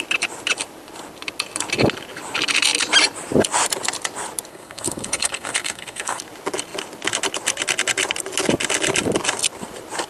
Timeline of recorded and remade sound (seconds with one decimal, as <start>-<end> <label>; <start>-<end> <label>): 0.0-4.5 recorded; 4.5-6.2 remade; 6.2-10.1 recorded